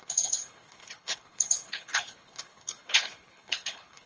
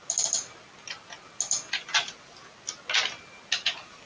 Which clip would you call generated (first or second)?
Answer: first